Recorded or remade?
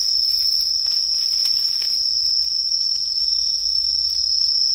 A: recorded